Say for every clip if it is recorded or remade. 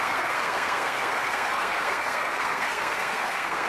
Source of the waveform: remade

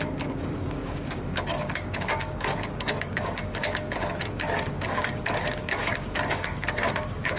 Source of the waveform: remade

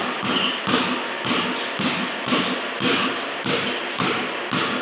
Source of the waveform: recorded